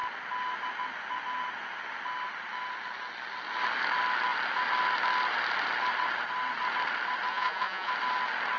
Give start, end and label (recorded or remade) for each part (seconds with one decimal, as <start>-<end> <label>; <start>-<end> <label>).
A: 0.0-7.3 recorded; 7.3-7.9 remade; 7.9-8.6 recorded